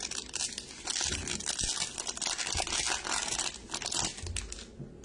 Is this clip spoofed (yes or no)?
no